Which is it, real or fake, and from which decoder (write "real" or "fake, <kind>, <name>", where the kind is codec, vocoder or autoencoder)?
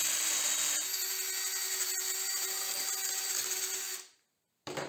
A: real